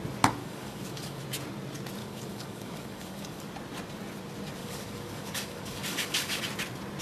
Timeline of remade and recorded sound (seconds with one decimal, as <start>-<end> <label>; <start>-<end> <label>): 0.0-0.4 recorded; 0.4-1.2 remade; 1.2-2.0 recorded; 2.0-3.5 remade; 3.5-4.6 recorded; 4.6-6.4 remade; 6.4-7.0 recorded